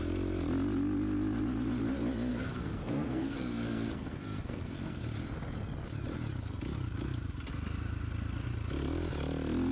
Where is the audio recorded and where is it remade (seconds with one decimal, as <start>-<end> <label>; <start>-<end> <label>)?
0.0-2.3 recorded; 2.3-5.0 remade; 5.0-9.7 recorded